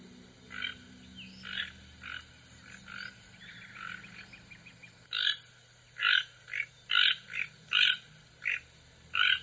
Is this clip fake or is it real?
real